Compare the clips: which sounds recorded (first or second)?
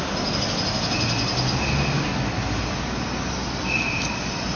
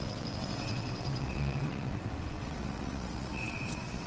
first